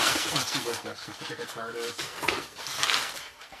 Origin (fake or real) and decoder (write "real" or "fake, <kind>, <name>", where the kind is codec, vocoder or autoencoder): fake, codec, SNAC